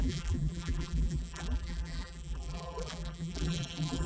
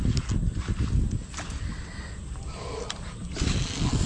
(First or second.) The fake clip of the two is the first